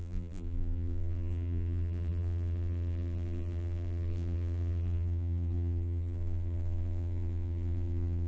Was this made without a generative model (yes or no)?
no